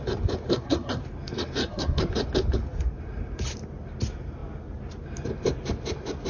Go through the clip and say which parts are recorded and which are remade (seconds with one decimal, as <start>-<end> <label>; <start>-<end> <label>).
0.0-0.5 recorded; 0.5-1.0 remade; 1.0-1.6 recorded; 1.6-2.1 remade; 2.1-6.3 recorded